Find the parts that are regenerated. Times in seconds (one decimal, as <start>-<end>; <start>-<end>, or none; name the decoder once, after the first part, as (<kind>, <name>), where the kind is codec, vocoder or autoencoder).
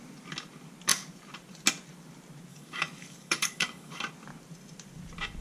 2.5-4.0 (codec, DAC)